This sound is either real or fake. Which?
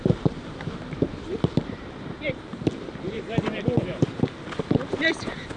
fake